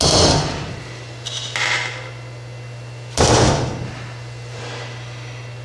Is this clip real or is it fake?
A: real